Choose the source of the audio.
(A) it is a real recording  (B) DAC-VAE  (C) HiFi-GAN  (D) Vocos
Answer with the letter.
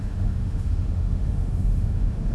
B